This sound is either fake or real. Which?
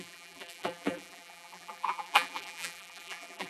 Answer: fake